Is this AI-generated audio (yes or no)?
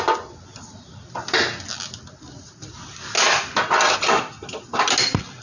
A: no